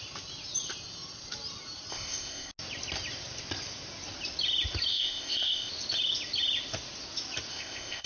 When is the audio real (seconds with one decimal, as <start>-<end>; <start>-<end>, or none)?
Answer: 0.0-1.9; 2.5-4.9; 5.7-7.5